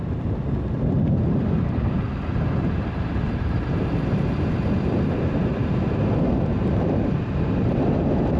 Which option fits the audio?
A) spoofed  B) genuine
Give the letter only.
B